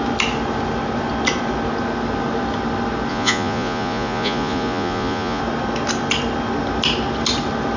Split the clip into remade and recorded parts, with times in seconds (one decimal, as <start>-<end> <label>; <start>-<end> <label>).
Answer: 0.0-3.1 recorded; 3.1-5.4 remade; 5.4-7.8 recorded